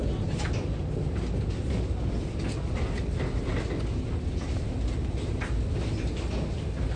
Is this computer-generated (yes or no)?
no